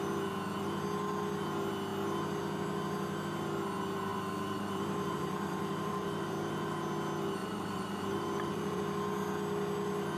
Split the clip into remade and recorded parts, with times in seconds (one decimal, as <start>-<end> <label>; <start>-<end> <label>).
0.0-4.1 recorded; 4.1-6.5 remade; 6.5-7.4 recorded; 7.4-8.8 remade; 8.8-10.2 recorded

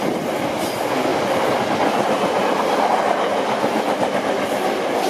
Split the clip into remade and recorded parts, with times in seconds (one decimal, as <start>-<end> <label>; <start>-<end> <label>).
0.0-5.1 recorded

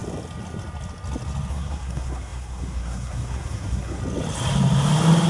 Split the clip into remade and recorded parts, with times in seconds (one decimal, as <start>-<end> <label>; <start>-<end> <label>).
0.0-1.5 recorded; 1.5-4.0 remade; 4.0-5.3 recorded

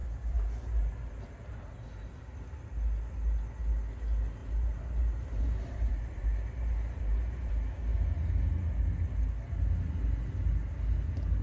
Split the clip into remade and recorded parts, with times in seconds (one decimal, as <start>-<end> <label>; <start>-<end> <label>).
0.0-1.7 remade; 1.7-4.4 recorded; 4.4-7.5 remade; 7.5-11.4 recorded

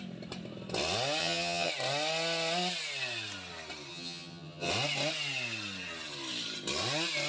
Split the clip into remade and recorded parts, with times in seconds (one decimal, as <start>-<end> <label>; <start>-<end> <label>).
0.0-1.2 recorded; 1.2-1.7 remade; 1.7-3.9 recorded; 3.9-4.7 remade; 4.7-7.3 recorded

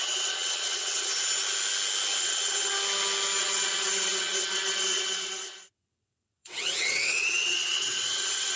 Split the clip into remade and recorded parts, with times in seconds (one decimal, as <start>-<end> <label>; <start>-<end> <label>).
0.0-1.1 remade; 1.1-2.2 recorded; 2.2-2.7 remade; 2.7-3.4 recorded; 3.4-8.6 remade

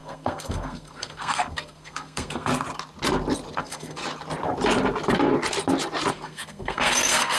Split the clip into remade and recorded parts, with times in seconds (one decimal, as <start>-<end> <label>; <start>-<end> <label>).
0.0-2.5 remade; 2.5-3.6 recorded; 3.6-4.0 remade; 4.0-6.1 recorded; 6.1-7.4 remade

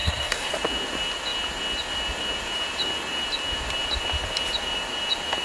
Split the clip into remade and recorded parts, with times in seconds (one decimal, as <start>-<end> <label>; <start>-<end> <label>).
0.0-0.5 remade; 0.5-5.4 recorded